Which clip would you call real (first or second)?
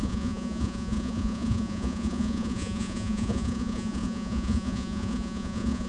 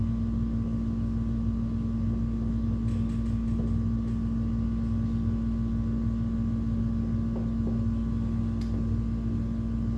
second